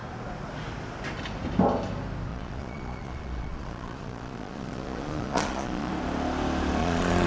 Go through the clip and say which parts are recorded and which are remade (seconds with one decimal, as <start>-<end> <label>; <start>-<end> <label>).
0.0-2.3 recorded; 2.3-5.9 remade; 5.9-6.8 recorded; 6.8-7.3 remade